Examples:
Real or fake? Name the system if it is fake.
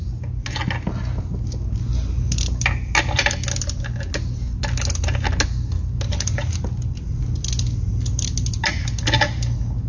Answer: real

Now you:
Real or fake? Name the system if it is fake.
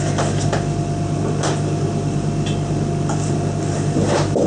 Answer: real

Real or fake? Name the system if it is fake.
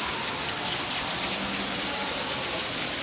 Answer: real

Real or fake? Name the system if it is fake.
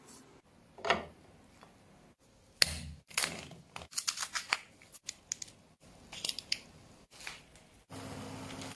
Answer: real